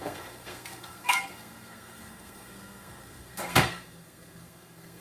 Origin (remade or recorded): remade